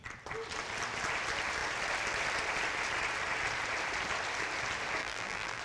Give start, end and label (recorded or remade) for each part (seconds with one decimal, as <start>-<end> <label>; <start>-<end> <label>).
0.0-5.0 recorded; 5.0-5.6 remade